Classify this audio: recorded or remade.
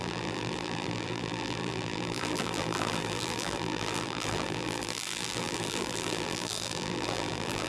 remade